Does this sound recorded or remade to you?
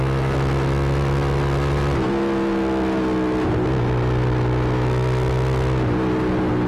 recorded